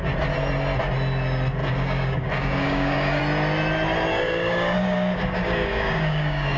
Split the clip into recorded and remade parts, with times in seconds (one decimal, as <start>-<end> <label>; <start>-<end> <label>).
0.0-1.6 recorded; 1.6-3.2 remade; 3.2-4.1 recorded; 4.1-6.6 remade